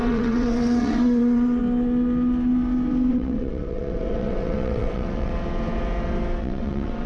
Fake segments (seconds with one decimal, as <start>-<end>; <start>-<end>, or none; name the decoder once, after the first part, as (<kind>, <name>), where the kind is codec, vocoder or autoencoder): 0.0-1.6 (vocoder, WaveNeXt); 3.1-5.3; 6.4-7.1